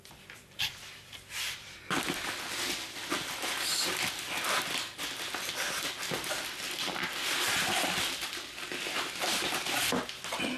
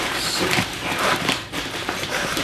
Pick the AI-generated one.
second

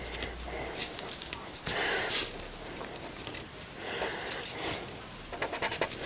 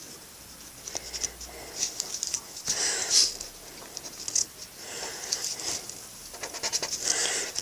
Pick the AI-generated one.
first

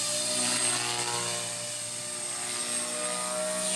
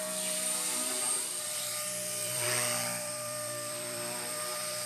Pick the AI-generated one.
second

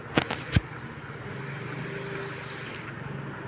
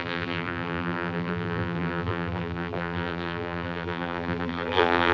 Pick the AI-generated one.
second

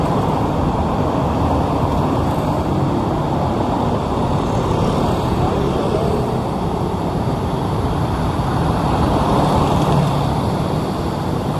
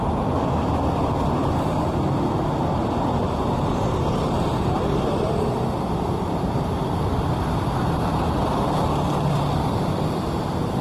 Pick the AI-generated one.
first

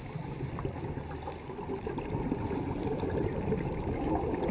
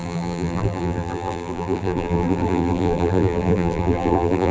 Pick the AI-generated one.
second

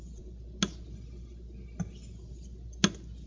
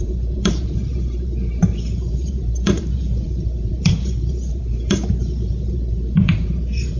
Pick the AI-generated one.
second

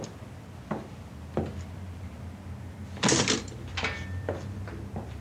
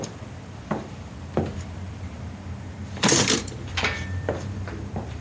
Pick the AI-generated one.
second